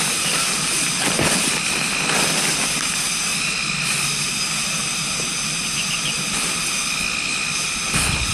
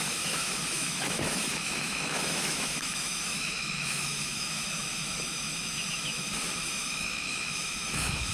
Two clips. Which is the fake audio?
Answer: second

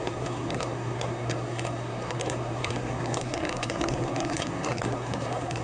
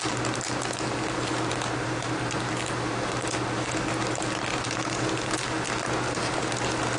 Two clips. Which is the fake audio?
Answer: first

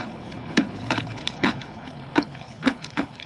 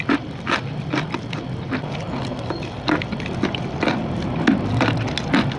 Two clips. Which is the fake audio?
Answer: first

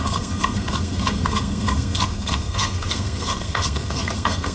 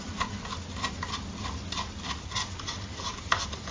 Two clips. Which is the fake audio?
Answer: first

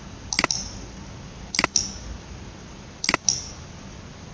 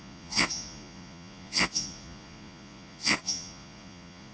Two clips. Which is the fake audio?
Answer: second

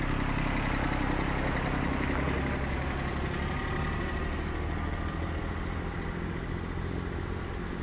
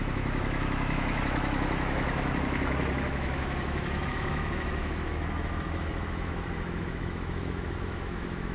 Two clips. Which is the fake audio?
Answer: second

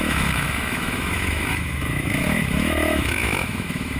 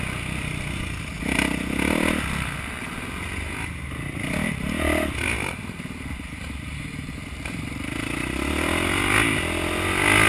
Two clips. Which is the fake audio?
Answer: first